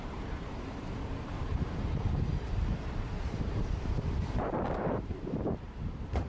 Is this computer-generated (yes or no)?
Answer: yes